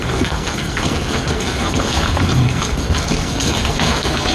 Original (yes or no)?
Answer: no